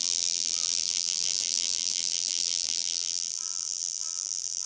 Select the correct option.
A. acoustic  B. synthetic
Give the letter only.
B